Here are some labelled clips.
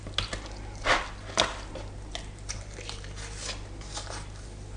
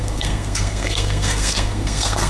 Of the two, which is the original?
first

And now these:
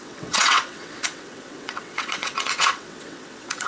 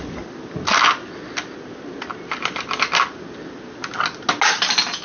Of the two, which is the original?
second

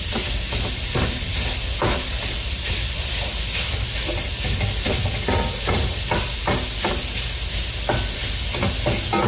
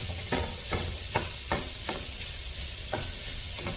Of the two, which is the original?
first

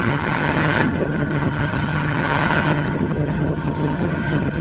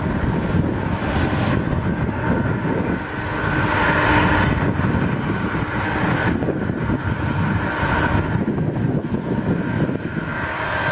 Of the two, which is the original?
second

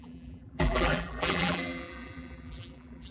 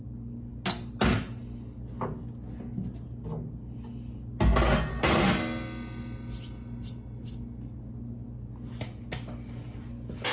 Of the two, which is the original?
second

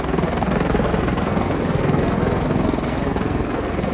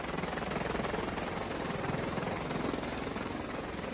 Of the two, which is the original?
second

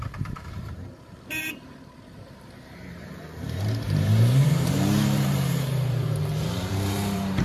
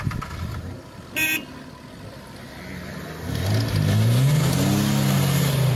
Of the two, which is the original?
second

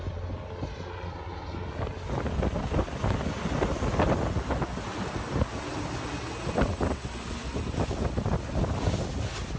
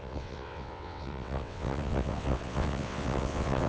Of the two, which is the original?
first